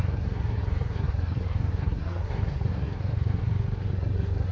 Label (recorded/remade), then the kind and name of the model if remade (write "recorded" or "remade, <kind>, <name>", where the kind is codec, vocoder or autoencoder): remade, codec, SNAC